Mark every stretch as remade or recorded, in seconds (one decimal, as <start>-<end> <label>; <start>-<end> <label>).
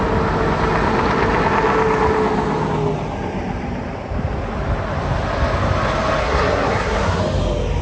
0.0-6.2 recorded; 6.2-7.2 remade; 7.2-7.8 recorded